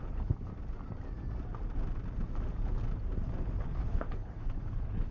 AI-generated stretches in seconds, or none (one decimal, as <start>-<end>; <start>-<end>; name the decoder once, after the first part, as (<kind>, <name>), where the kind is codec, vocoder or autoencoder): 0.0-0.5 (codec, HILCodec); 3.6-5.1